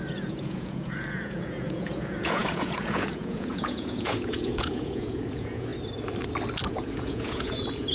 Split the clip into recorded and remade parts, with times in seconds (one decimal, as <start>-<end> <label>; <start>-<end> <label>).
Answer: 0.0-5.7 remade; 5.7-6.7 recorded; 6.7-7.9 remade